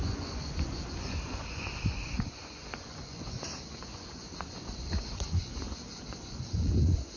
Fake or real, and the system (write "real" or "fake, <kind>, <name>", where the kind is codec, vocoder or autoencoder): fake, vocoder, Vocos